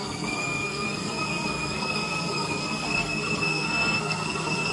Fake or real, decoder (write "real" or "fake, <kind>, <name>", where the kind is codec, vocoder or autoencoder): fake, codec, SNAC